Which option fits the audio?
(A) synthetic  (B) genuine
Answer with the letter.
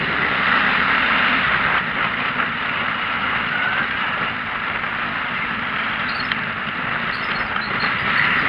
A